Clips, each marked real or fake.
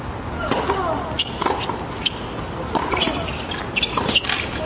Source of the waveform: real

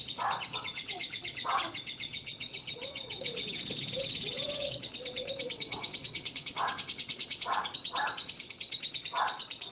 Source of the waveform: fake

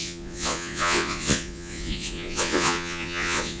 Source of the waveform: fake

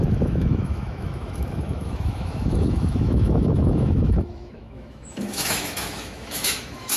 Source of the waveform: fake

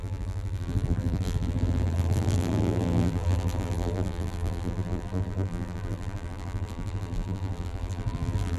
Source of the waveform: fake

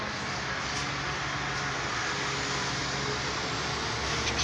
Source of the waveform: real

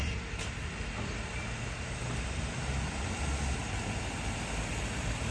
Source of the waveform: real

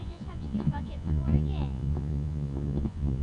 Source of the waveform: fake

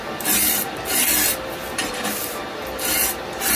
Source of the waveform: real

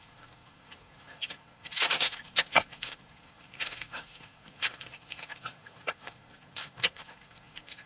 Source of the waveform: fake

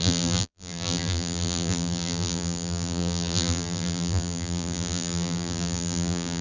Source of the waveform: fake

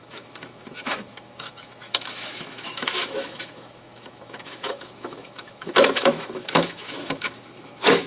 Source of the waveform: fake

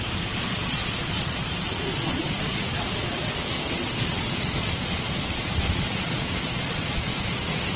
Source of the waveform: fake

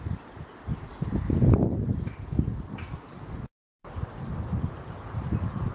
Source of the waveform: real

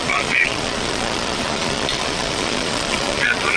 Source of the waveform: fake